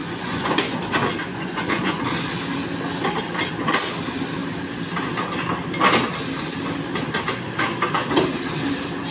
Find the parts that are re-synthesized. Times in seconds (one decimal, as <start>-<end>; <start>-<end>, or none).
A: 0.0-0.8; 1.3-2.0